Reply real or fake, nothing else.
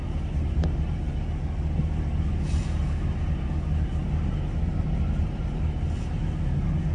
real